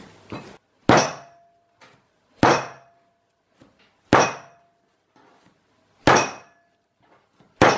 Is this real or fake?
real